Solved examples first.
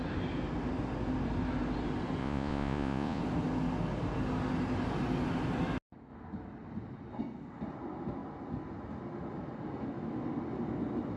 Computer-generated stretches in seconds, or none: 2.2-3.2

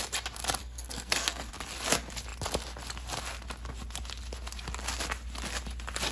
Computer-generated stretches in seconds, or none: 0.6-1.5

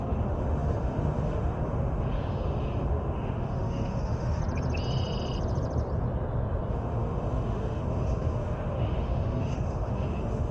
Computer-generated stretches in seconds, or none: 0.0-4.4; 6.7-10.5

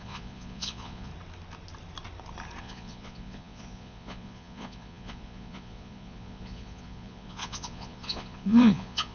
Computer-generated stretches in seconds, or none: 0.0-1.1; 2.6-9.1

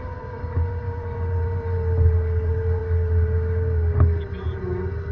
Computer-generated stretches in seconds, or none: none